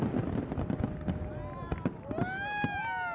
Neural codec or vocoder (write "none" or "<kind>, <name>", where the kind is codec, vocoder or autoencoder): none